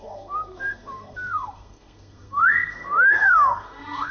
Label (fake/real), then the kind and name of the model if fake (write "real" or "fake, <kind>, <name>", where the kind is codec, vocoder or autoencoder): fake, codec, SNAC